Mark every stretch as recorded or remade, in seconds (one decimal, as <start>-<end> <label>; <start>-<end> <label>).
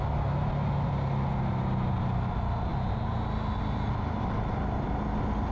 0.0-5.5 recorded